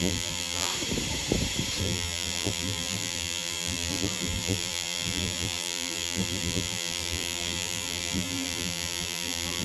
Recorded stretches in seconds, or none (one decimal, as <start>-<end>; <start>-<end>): 0.7-1.8